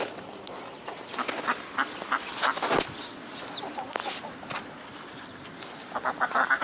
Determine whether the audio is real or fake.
real